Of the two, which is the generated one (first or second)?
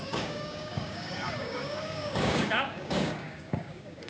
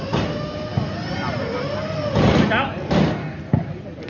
first